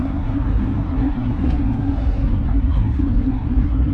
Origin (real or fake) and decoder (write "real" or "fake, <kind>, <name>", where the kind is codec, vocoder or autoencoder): fake, codec, SNAC